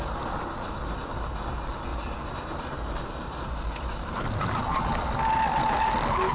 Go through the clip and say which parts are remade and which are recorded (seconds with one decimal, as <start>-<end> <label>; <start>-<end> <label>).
0.0-6.3 recorded